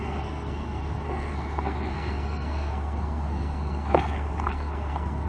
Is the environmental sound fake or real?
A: fake